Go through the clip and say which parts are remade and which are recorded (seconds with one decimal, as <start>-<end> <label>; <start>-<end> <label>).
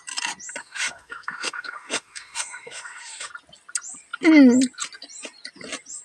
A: 0.0-0.6 recorded; 0.6-3.3 remade; 3.3-6.0 recorded